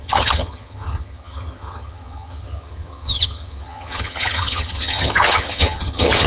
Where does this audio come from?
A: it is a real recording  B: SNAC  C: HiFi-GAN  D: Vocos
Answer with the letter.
C